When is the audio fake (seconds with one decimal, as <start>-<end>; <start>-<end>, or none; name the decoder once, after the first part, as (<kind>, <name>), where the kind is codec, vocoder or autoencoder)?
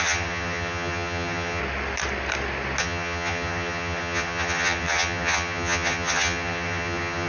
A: 0.0-1.6 (vocoder, HiFi-GAN); 2.8-7.3